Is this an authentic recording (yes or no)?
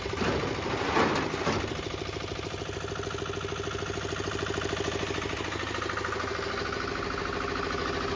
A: yes